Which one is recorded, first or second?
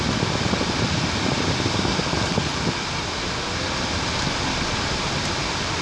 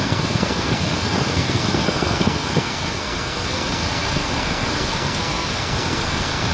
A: first